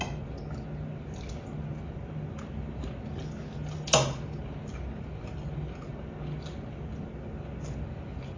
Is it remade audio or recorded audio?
recorded